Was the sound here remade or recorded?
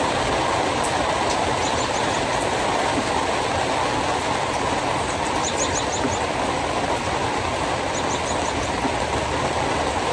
recorded